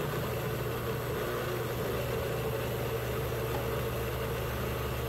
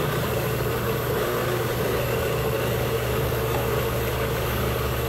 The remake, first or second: second